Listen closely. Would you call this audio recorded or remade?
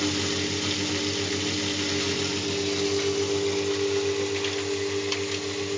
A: recorded